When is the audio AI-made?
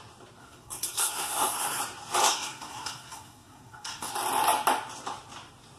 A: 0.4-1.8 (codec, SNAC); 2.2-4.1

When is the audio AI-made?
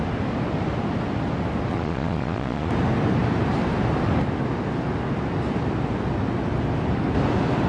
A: 1.7-2.7 (vocoder, Vocos)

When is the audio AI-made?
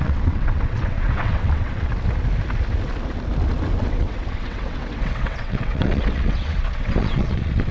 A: 0.0-1.9 (vocoder, WaveNeXt); 3.8-7.7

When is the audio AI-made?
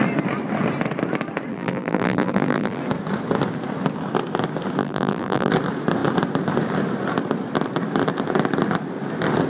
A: 1.5-2.8 (vocoder, BigVGAN v2); 4.8-5.5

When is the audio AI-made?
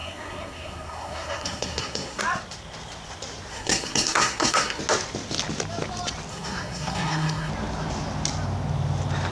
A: 0.0-2.2 (codec, SNAC); 3.5-4.8; 6.3-7.5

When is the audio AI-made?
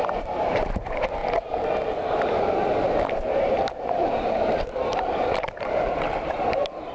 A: 0.0-1.2 (vocoder, BigVGAN v2); 3.1-6.9